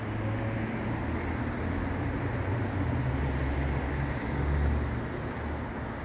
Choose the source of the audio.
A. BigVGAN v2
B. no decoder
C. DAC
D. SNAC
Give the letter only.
B